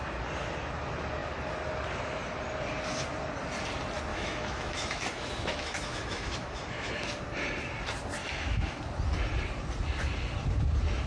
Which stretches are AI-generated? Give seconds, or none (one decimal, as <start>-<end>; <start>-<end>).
4.1-6.9; 8.2-8.8